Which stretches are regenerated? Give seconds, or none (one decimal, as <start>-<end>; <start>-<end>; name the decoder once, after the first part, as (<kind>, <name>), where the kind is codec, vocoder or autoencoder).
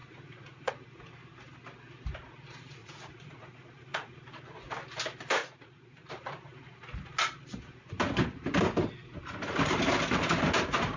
0.0-0.7 (vocoder, Vocos); 2.8-4.1; 5.4-6.1